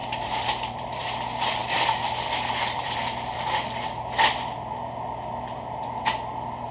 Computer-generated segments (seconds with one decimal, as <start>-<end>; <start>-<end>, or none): 0.0-1.0; 1.6-4.3